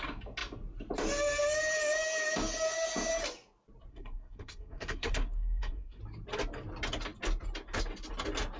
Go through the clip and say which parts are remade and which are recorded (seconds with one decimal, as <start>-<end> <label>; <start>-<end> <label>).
0.0-3.9 recorded; 3.9-6.0 remade; 6.0-8.6 recorded